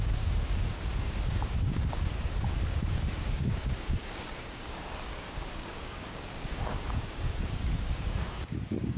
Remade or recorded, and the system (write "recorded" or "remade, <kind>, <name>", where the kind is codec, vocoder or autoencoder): remade, codec, DAC